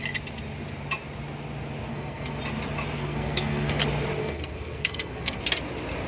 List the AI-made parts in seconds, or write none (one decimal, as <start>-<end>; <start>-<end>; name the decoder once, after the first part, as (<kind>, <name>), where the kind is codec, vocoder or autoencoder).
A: 1.9-2.4 (codec, SNAC); 3.0-3.8; 4.2-5.4